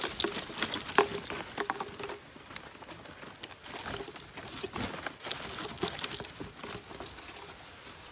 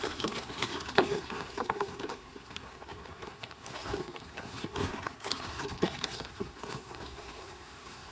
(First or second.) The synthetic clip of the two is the second